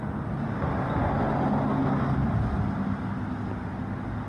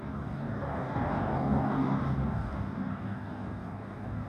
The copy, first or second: second